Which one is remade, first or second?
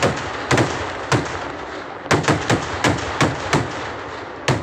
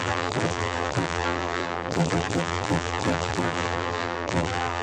second